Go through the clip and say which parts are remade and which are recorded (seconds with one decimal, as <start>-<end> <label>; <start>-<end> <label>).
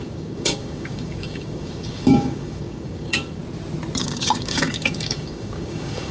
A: 0.0-3.4 remade; 3.4-4.0 recorded; 4.0-6.1 remade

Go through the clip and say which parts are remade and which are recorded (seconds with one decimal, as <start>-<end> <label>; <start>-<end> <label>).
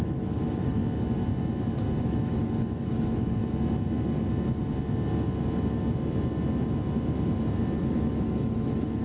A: 0.0-0.8 remade; 0.8-2.0 recorded; 2.0-3.4 remade; 3.4-7.8 recorded; 7.8-9.0 remade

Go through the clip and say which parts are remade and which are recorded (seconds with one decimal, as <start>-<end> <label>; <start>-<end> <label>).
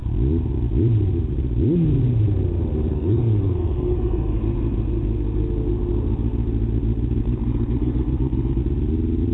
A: 0.0-2.9 recorded; 2.9-4.4 remade; 4.4-7.2 recorded; 7.2-8.6 remade; 8.6-9.3 recorded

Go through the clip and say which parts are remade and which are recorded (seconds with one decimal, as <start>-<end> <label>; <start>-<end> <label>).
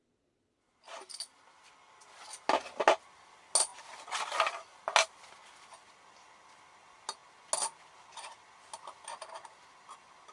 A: 0.0-10.3 recorded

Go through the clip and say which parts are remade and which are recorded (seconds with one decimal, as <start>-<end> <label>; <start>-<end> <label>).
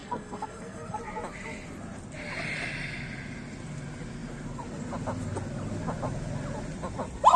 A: 0.0-1.0 remade; 1.0-7.4 recorded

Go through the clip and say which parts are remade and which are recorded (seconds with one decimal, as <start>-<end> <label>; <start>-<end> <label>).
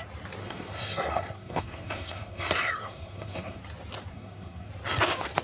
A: 0.0-0.4 recorded; 0.4-3.6 remade; 3.6-4.1 recorded; 4.1-4.7 remade; 4.7-5.4 recorded